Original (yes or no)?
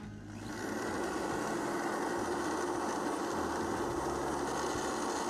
yes